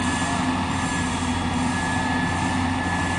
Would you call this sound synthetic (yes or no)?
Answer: no